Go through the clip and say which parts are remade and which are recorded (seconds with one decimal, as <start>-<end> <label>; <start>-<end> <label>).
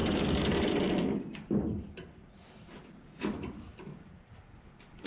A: 0.0-2.2 recorded; 2.2-4.4 remade; 4.4-5.1 recorded